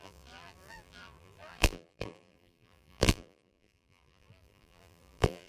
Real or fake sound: fake